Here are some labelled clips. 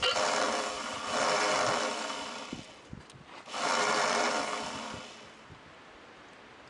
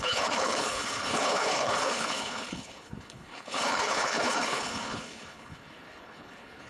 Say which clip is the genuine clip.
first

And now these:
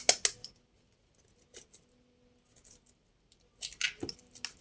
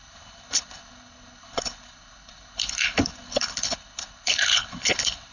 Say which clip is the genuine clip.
first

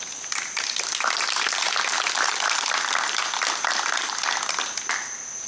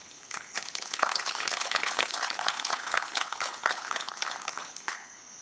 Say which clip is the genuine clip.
first